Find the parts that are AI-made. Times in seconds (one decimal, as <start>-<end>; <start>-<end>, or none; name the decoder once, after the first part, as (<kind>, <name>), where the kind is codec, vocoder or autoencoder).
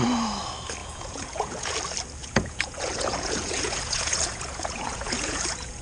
0.8-1.7 (vocoder, Vocos); 2.2-5.8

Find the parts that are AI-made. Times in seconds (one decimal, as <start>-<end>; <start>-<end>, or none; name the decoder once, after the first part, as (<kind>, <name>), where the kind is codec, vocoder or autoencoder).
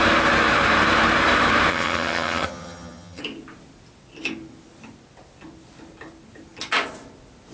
1.7-3.2 (vocoder, HiFi-GAN)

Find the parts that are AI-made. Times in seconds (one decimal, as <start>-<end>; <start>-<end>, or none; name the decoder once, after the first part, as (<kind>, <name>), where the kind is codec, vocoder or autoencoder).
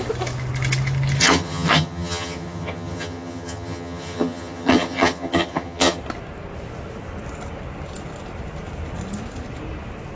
1.2-6.0 (vocoder, HiFi-GAN)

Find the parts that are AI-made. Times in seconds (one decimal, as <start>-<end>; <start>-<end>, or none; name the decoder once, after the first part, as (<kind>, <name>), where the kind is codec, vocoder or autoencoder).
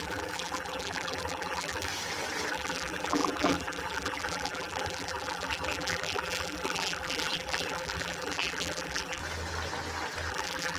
0.0-1.9 (vocoder, BigVGAN v2); 2.5-9.2; 10.3-10.8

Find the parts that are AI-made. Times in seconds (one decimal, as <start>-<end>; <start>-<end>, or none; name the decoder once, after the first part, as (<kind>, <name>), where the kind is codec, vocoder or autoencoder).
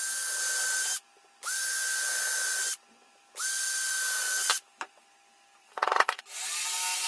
5.6-6.2 (vocoder, WaveNeXt)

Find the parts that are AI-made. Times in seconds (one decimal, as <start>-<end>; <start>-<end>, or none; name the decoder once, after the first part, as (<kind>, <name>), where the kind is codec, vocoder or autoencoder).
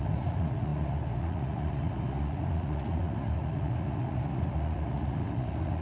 0.0-5.8 (vocoder, Vocos)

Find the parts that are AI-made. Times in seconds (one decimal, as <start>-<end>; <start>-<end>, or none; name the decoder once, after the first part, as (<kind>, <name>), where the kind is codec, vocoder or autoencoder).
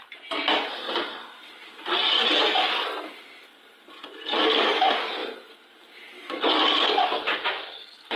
5.2-7.0 (vocoder, BigVGAN v2)